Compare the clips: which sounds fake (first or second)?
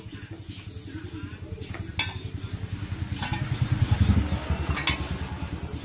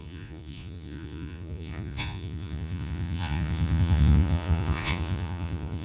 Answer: second